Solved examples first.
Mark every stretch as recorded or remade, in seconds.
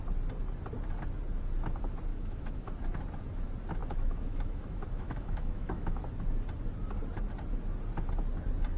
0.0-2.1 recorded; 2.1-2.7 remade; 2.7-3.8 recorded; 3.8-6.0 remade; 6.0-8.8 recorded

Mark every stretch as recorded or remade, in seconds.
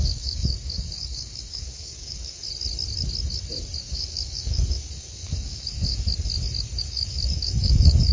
0.0-2.4 remade; 2.4-3.8 recorded; 3.8-5.9 remade; 5.9-6.8 recorded; 6.8-8.1 remade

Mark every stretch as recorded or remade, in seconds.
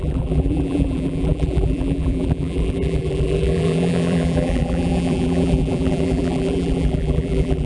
0.0-7.7 remade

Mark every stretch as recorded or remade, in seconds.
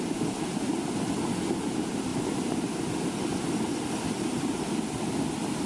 0.0-5.7 recorded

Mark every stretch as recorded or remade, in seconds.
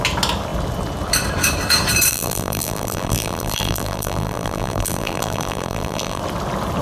0.0-2.1 recorded; 2.1-6.2 remade; 6.2-6.8 recorded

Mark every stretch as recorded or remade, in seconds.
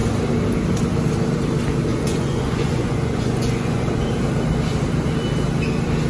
0.0-1.9 recorded; 1.9-4.1 remade; 4.1-6.1 recorded